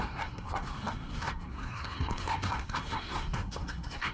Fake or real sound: fake